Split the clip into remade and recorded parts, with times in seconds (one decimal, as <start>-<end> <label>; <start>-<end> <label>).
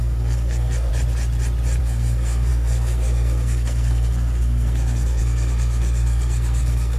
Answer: 0.0-0.9 remade; 0.9-1.8 recorded; 1.8-7.0 remade